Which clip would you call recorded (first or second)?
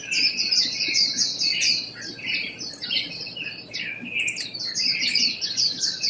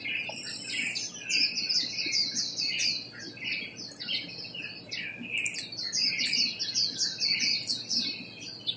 second